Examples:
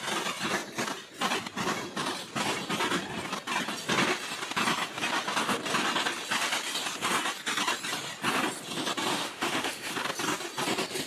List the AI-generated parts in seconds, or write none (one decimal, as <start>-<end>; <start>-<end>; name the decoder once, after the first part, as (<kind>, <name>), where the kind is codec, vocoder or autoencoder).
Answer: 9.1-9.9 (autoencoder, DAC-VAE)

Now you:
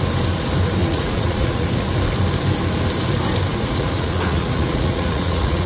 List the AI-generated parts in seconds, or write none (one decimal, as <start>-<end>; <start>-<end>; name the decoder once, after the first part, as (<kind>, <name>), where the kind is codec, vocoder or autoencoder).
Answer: 0.8-1.7 (vocoder, Vocos); 3.5-5.7

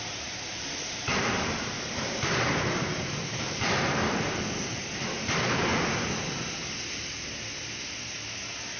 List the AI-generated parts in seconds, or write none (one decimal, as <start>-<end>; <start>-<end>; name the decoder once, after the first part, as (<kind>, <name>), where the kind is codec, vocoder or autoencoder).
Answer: 0.0-5.7 (vocoder, BigVGAN v2)

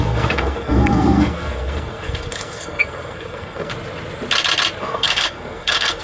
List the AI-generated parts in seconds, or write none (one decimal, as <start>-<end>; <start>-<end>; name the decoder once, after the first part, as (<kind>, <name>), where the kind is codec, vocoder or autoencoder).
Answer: 0.0-3.7 (codec, SNAC); 4.8-6.0